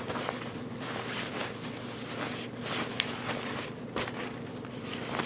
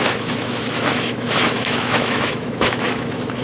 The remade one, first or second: second